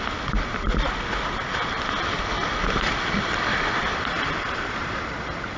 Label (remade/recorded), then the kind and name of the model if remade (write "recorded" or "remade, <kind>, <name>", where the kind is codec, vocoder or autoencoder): recorded